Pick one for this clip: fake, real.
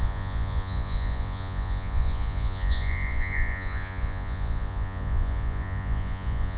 fake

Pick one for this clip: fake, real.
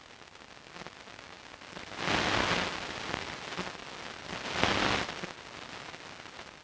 real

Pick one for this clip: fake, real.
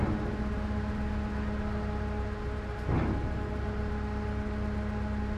real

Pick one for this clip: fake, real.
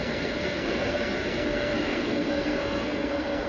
fake